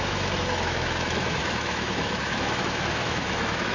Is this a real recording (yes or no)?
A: no